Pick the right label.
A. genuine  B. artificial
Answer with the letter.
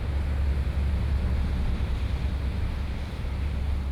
A